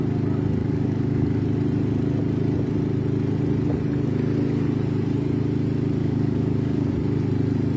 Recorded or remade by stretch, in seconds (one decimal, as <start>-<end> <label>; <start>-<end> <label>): 0.0-0.6 recorded; 0.6-1.4 remade; 1.4-6.0 recorded; 6.0-6.9 remade; 6.9-7.8 recorded